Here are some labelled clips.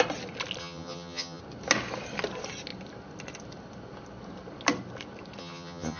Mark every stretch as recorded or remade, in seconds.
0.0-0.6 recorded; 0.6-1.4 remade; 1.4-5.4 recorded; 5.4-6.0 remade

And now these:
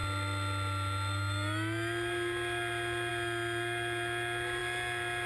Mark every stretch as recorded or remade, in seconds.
0.0-5.3 recorded

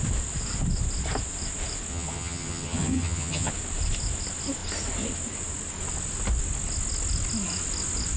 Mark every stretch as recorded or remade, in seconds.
0.0-1.9 recorded; 1.9-3.5 remade; 3.5-8.2 recorded

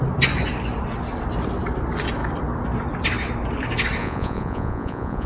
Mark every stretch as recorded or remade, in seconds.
0.0-4.0 recorded; 4.0-5.3 remade

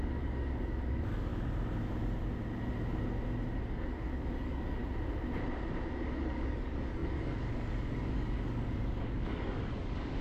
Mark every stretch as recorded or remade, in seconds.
0.0-1.3 remade; 1.3-3.7 recorded; 3.7-4.8 remade; 4.8-5.9 recorded; 5.9-10.2 remade